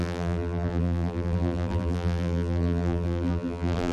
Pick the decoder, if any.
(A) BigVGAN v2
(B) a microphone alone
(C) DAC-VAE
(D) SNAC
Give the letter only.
A